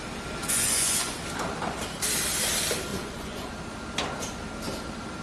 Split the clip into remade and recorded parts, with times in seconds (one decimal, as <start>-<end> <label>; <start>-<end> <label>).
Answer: 0.0-0.4 recorded; 0.4-1.2 remade; 1.2-2.9 recorded; 2.9-3.5 remade; 3.5-5.2 recorded